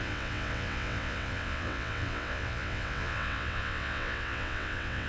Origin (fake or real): fake